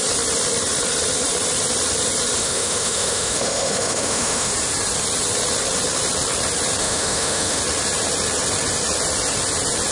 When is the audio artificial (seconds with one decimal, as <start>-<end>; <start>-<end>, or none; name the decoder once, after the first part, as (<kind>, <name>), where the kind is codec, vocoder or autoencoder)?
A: 2.4-4.5 (autoencoder, DAC-VAE); 6.8-7.6